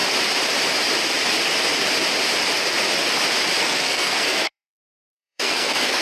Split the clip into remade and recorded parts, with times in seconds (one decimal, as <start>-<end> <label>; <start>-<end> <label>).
0.0-3.6 recorded; 3.6-6.0 remade